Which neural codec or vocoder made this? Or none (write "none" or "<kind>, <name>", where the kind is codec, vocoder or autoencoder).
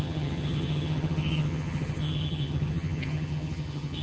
vocoder, HiFi-GAN